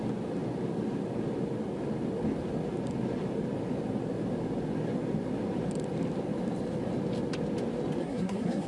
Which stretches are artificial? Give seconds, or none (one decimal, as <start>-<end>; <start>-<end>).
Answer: 8.0-8.7